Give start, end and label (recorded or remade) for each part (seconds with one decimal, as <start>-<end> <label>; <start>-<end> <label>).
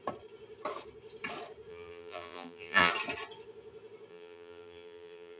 0.0-1.7 recorded; 1.7-2.9 remade; 2.9-4.1 recorded; 4.1-5.4 remade